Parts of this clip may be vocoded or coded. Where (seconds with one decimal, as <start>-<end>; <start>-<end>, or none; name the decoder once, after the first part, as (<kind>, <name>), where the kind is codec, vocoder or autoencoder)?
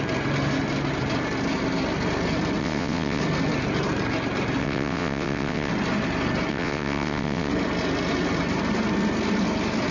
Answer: 2.6-3.2 (vocoder, WaveNeXt); 4.6-5.7; 6.5-7.5